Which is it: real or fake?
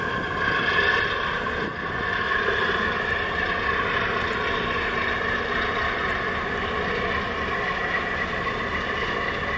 real